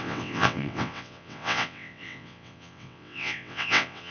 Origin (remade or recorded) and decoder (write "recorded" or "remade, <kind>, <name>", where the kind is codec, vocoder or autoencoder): remade, vocoder, WaveNeXt